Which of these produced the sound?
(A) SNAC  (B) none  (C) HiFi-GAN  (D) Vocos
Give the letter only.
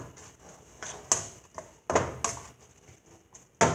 B